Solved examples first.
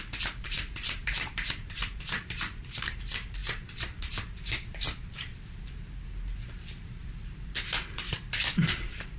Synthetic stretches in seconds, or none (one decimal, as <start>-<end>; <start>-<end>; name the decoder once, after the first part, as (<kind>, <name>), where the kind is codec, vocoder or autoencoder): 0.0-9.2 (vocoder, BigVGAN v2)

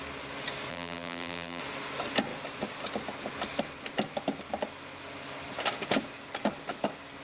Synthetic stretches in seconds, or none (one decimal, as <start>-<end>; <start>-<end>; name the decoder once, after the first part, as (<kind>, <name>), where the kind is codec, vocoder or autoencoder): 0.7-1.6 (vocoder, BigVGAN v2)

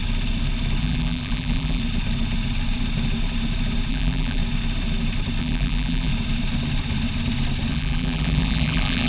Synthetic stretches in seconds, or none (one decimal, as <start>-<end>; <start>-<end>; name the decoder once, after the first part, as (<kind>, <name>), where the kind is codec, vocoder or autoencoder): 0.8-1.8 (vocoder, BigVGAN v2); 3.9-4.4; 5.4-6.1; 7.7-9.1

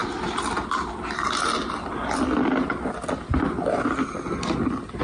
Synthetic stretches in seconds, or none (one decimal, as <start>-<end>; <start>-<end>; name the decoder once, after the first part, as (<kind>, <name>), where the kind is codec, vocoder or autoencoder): 0.0-2.7 (vocoder, BigVGAN v2)